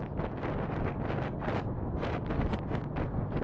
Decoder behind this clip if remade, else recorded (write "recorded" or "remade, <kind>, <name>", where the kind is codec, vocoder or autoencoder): recorded